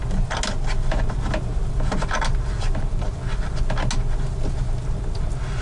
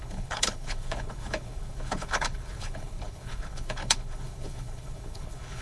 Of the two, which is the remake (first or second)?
second